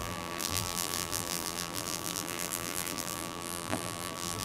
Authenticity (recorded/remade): remade